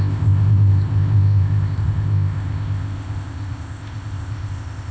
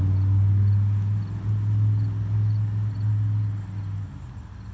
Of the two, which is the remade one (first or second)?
first